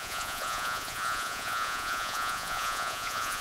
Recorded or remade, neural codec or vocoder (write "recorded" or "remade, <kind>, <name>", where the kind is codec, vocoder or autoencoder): remade, vocoder, Vocos